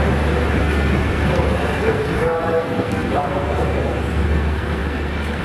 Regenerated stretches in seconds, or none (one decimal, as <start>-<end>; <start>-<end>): 0.6-5.4